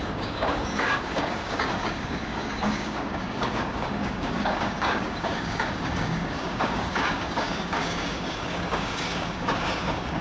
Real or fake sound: fake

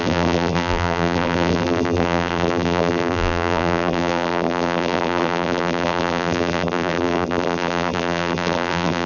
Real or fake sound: fake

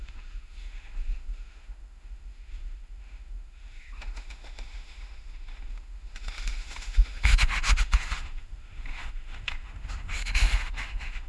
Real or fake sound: fake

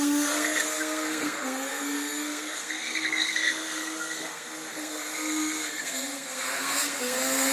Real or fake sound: fake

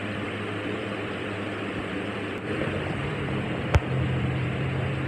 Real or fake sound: fake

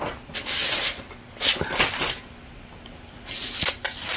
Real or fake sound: real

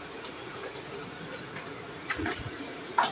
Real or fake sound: fake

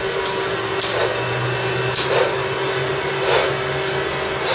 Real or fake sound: real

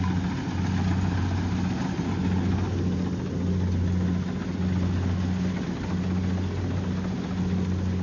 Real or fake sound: real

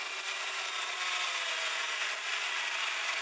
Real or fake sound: real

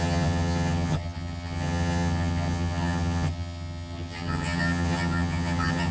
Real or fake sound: fake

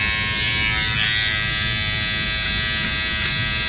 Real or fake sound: real